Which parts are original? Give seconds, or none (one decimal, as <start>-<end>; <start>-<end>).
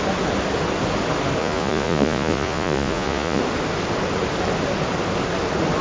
0.0-1.4; 3.4-5.8